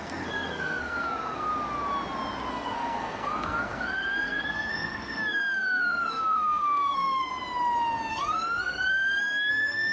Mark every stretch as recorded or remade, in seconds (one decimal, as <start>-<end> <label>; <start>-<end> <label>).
0.0-1.5 remade; 1.5-2.5 recorded; 2.5-7.3 remade; 7.3-8.1 recorded; 8.1-9.9 remade